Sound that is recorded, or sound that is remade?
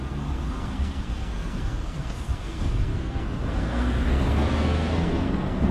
remade